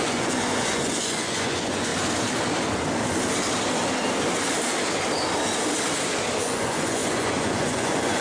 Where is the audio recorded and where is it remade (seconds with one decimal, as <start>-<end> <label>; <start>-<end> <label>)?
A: 0.0-1.9 remade; 1.9-6.4 recorded; 6.4-8.2 remade